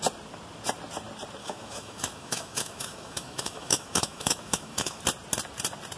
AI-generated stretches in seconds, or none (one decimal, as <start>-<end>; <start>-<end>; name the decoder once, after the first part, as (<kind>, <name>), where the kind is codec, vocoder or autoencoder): 1.4-5.0 (autoencoder, DAC-VAE)